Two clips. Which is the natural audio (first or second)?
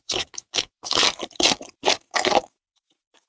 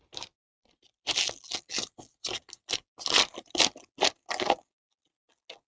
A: second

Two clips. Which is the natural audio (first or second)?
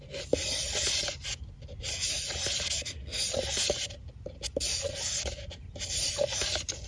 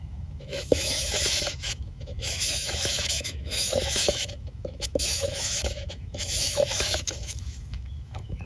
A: first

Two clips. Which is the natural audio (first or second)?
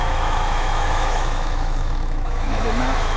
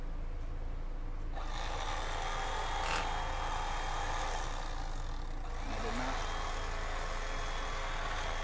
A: second